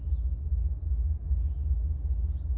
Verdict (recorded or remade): recorded